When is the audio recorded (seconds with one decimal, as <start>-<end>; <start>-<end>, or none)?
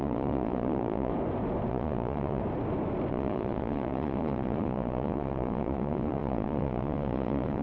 1.1-1.7; 2.4-3.1